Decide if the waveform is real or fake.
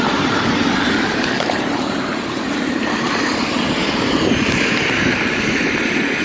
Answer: fake